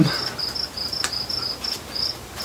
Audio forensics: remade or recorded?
recorded